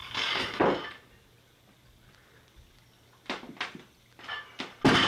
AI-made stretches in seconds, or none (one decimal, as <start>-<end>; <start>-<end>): 0.0-0.6